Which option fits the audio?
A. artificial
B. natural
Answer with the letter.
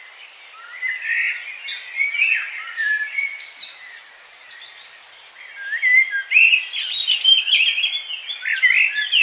B